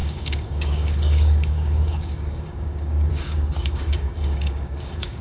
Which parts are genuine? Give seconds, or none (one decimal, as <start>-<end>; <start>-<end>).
none